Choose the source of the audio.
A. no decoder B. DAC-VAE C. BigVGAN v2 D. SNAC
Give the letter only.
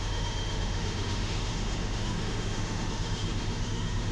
B